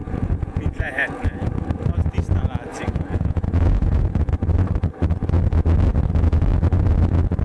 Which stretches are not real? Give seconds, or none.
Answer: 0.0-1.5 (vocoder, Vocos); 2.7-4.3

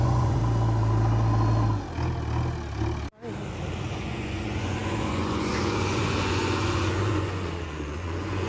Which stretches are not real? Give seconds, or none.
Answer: 0.0-0.4 (vocoder, Vocos); 3.8-8.5

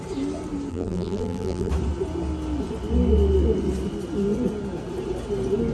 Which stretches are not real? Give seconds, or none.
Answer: 0.7-1.7 (vocoder, BigVGAN v2)

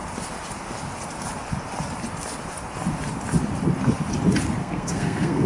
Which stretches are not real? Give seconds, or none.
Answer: 4.6-5.5 (codec, SNAC)

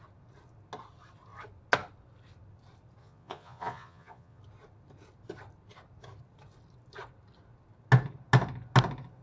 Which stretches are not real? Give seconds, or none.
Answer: 3.0-4.4 (vocoder, Vocos)

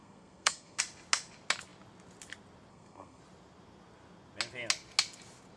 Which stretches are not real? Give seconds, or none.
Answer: 0.0-0.8 (codec, SNAC); 2.7-3.2